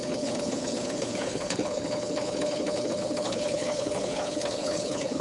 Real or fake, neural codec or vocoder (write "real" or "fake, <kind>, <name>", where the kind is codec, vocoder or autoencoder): fake, codec, HILCodec